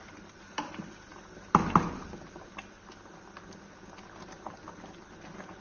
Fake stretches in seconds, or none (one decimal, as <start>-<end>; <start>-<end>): none